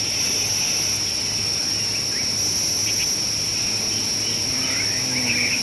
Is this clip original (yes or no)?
yes